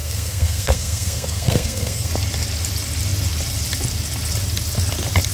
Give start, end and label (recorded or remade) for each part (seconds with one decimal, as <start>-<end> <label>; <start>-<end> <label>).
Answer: 0.0-2.1 remade; 2.1-5.3 recorded